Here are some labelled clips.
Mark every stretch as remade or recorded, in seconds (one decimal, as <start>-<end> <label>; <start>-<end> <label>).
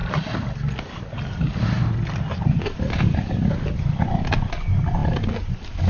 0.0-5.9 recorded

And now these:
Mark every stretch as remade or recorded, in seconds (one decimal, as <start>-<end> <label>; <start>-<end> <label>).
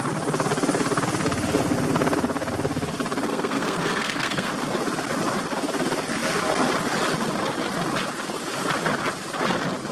0.0-3.3 recorded; 3.3-4.5 remade; 4.5-9.9 recorded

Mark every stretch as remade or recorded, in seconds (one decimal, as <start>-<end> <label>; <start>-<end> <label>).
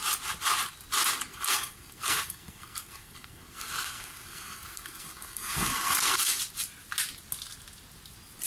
0.0-1.3 recorded; 1.3-6.4 remade; 6.4-8.5 recorded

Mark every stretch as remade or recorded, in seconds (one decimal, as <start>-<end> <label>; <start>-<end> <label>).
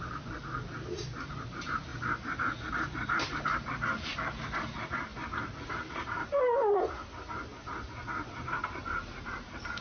0.0-1.9 remade; 1.9-2.7 recorded; 2.7-5.1 remade; 5.1-5.7 recorded; 5.7-7.5 remade; 7.5-8.3 recorded; 8.3-9.8 remade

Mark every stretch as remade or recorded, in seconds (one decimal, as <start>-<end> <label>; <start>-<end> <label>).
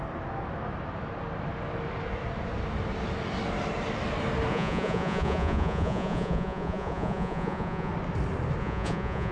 0.0-4.5 recorded; 4.5-7.9 remade; 7.9-8.6 recorded; 8.6-9.3 remade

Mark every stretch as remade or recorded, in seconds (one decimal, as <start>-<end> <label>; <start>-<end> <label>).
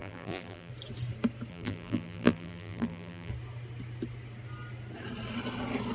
0.0-0.7 remade; 0.7-1.5 recorded; 1.5-3.3 remade; 3.3-5.9 recorded